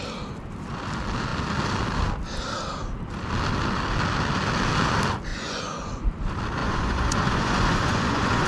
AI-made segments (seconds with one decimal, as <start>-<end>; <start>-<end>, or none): 5.3-6.0; 6.6-8.5